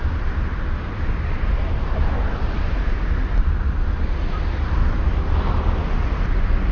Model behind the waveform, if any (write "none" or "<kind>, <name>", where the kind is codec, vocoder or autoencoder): none